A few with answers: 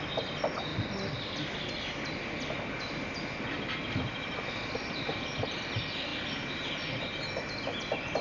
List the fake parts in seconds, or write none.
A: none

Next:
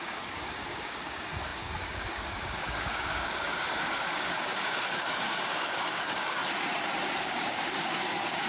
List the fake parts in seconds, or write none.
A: 0.0-6.4 (codec, DAC); 7.2-8.5

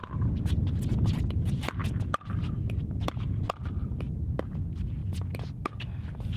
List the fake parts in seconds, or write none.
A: none

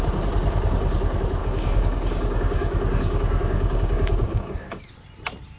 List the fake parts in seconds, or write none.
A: 1.4-4.8 (codec, DAC)